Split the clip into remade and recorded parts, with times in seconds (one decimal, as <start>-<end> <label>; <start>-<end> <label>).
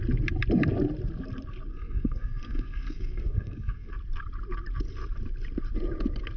0.0-1.7 recorded; 1.7-3.9 remade; 3.9-6.4 recorded